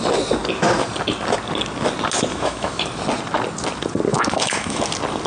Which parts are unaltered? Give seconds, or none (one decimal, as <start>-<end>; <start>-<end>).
0.0-2.3; 2.8-4.1; 4.8-5.3